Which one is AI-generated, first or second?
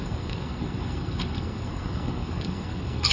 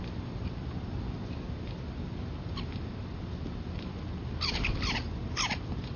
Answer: first